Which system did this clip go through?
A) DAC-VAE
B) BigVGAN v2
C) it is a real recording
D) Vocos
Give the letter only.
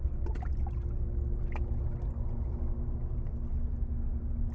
C